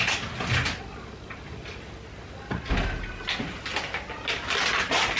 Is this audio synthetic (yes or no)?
no